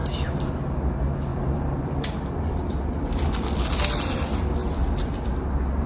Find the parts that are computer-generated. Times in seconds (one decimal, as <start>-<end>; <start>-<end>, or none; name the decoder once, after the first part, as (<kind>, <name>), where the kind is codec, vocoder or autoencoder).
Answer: 0.0-0.7 (vocoder, BigVGAN v2); 1.3-2.7